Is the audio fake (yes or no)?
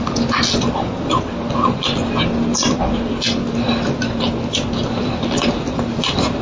no